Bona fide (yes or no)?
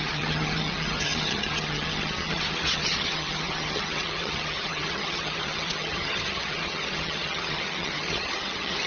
no